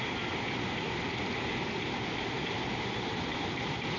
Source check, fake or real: real